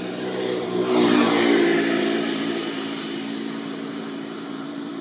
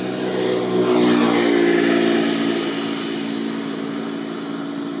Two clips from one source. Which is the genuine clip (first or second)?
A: second